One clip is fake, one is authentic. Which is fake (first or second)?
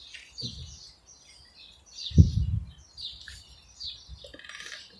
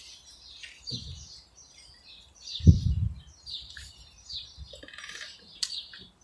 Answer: second